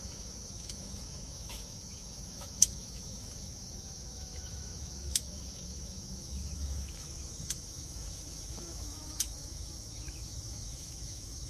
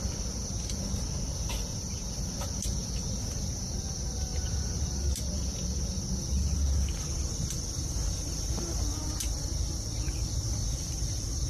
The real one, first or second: second